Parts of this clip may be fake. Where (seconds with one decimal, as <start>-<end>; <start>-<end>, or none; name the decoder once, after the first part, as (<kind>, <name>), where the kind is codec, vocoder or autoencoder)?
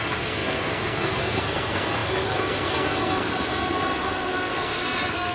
0.0-5.3 (codec, SNAC)